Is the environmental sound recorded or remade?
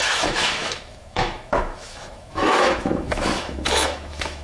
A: remade